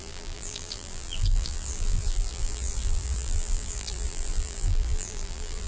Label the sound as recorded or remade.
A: remade